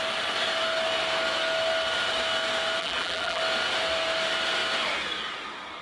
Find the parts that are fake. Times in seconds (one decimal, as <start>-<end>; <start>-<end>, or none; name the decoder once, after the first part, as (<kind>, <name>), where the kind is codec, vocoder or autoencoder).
2.8-3.4 (vocoder, BigVGAN v2)